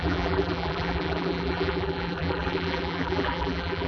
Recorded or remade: remade